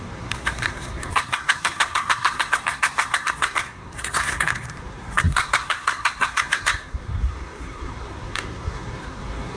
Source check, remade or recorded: remade